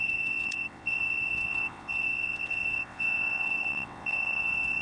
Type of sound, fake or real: fake